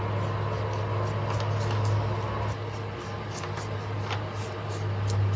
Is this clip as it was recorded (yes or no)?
yes